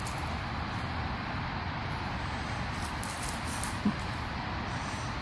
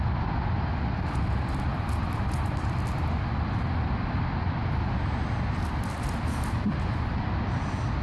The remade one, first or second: first